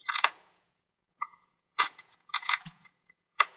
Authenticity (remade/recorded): remade